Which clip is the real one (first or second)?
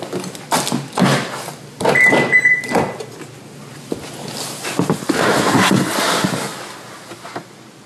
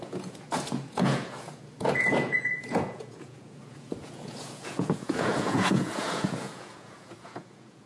first